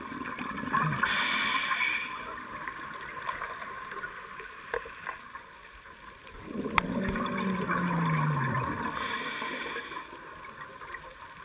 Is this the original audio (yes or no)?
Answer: yes